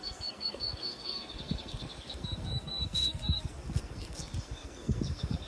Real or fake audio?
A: fake